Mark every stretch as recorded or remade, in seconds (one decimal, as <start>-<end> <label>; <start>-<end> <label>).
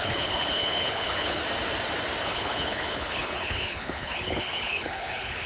0.0-1.4 remade; 1.4-2.2 recorded; 2.2-5.5 remade